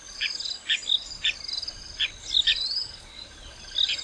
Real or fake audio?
real